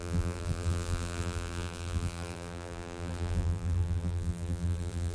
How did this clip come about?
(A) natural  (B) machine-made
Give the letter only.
B